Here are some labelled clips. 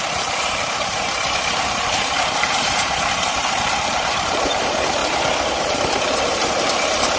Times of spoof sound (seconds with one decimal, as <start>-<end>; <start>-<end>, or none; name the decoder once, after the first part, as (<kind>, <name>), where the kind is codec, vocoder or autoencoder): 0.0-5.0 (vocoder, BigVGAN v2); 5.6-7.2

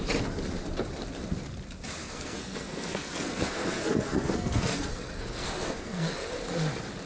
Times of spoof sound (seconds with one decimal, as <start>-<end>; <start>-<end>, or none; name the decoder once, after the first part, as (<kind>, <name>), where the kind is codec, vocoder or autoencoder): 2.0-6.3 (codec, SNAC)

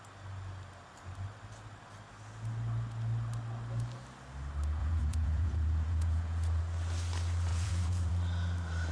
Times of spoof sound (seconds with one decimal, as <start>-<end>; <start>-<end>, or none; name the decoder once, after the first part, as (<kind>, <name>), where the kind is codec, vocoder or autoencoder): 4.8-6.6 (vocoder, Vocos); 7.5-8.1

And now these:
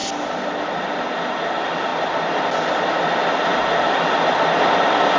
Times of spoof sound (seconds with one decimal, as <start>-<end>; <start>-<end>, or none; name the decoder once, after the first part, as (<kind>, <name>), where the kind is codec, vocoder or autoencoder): 0.0-0.5 (vocoder, BigVGAN v2); 1.9-2.4